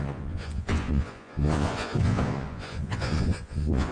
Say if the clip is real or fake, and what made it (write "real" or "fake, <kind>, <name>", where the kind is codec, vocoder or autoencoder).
fake, vocoder, Vocos